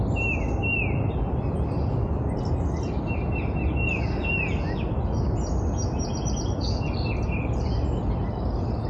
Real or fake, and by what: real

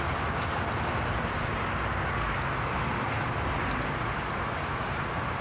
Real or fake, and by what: real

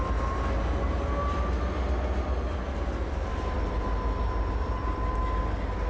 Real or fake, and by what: real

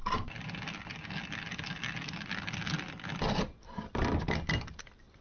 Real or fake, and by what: real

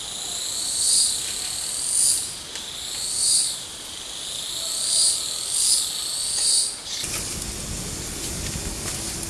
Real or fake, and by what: real